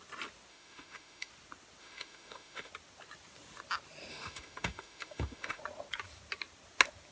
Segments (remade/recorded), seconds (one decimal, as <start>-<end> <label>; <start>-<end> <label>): 0.0-0.5 recorded; 0.5-1.3 remade; 1.3-1.8 recorded; 1.8-2.7 remade; 2.7-4.1 recorded; 4.1-5.6 remade; 5.6-7.1 recorded